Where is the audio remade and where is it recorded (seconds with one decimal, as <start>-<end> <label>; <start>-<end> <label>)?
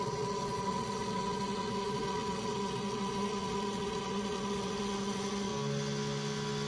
0.0-5.5 remade; 5.5-6.7 recorded